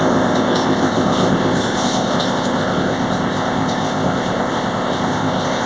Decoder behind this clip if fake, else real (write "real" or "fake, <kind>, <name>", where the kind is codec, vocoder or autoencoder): fake, codec, ZipCodec